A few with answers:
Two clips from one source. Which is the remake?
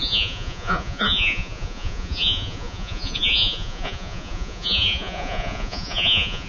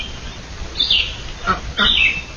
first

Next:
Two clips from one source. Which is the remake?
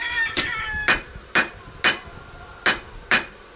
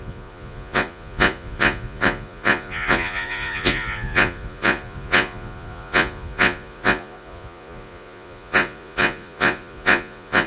second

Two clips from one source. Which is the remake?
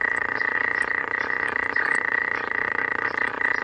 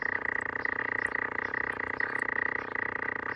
first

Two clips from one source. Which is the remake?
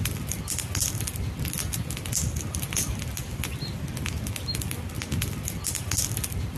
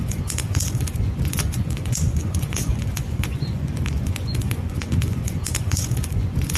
second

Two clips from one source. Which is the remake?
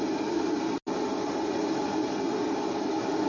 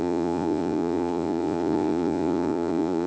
second